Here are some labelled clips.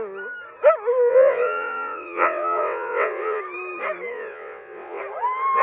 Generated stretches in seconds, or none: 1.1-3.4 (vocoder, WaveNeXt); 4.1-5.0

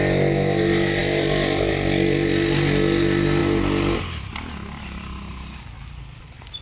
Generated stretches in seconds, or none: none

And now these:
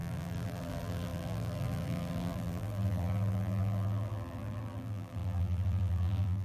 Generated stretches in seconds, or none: 0.0-6.4 (vocoder, BigVGAN v2)

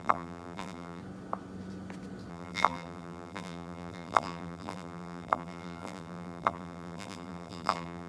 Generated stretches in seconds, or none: 0.0-1.0 (vocoder, BigVGAN v2); 2.3-8.1

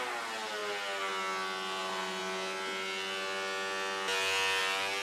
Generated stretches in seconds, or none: none

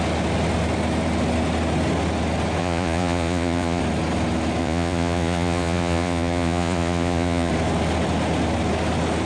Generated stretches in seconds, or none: 2.6-3.8 (vocoder, Vocos); 4.6-7.5

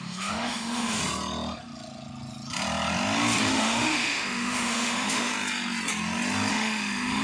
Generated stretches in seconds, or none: 0.0-1.0 (autoencoder, DAC-VAE); 3.5-5.3; 6.5-7.2